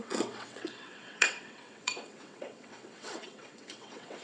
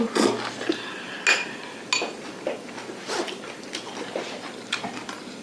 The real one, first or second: second